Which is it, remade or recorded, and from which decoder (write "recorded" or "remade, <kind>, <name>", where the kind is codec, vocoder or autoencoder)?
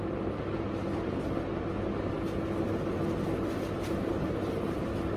recorded